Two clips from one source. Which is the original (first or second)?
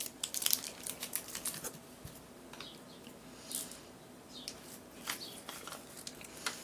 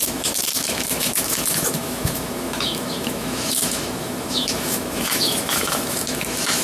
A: first